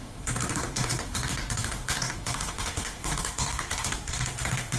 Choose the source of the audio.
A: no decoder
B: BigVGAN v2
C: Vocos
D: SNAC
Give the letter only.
D